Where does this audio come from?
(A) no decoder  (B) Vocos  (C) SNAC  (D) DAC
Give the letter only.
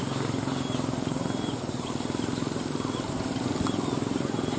A